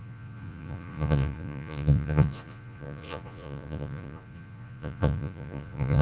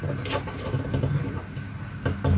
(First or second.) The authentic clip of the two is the second